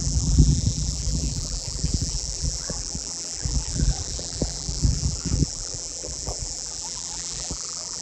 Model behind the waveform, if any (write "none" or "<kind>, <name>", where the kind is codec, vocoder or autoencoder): vocoder, BigVGAN v2